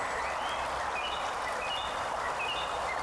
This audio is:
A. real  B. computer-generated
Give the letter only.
A